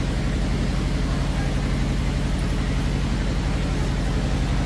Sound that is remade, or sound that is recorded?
recorded